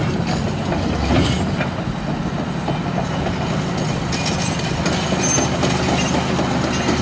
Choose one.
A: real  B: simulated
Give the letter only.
A